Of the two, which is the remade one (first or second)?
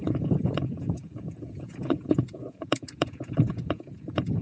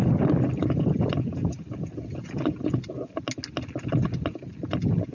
first